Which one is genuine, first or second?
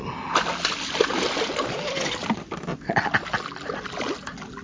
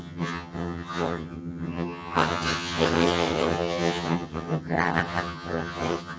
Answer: first